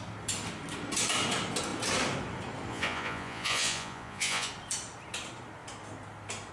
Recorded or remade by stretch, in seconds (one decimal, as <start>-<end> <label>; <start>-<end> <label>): 0.0-2.7 recorded; 2.7-4.5 remade; 4.5-6.5 recorded